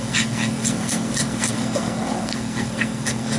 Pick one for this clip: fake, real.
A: fake